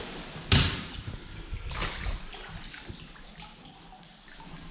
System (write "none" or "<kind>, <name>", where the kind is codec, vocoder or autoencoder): none